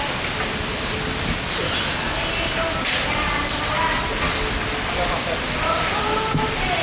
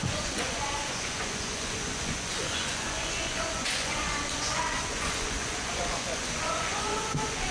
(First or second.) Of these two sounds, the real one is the first